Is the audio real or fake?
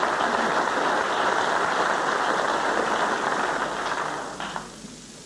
real